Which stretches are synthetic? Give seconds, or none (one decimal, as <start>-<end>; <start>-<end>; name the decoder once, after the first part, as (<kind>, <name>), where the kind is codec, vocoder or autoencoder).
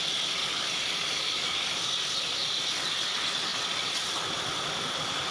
0.4-1.7 (codec, DAC)